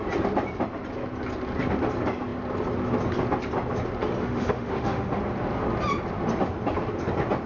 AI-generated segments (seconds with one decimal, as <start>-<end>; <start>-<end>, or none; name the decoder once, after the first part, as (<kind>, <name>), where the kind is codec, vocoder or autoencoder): 4.2-5.2 (autoencoder, DAC-VAE)